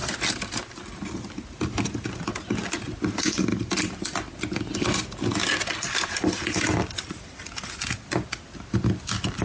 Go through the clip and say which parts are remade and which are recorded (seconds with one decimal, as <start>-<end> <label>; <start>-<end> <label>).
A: 0.0-9.4 recorded